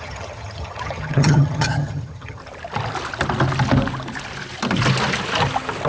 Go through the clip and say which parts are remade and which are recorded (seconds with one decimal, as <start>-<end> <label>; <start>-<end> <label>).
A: 0.0-2.4 remade; 2.4-5.9 recorded